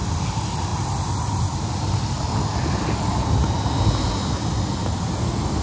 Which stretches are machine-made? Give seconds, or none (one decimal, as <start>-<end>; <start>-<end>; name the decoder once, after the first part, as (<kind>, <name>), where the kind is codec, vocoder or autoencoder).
none